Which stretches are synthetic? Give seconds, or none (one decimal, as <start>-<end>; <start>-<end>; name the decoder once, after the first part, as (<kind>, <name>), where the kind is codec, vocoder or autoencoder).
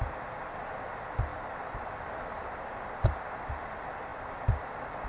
1.3-3.5 (vocoder, BigVGAN v2); 4.1-4.6